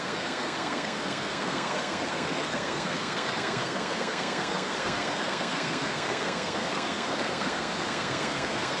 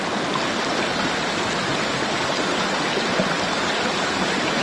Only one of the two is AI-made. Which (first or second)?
first